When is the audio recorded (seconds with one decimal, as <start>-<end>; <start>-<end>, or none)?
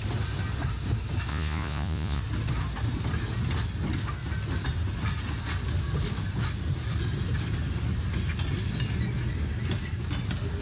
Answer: 0.0-1.3; 2.2-10.6